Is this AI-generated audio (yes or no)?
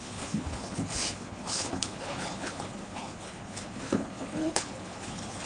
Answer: yes